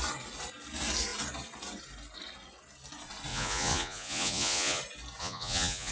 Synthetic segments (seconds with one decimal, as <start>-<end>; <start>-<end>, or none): 3.3-4.8; 5.2-5.9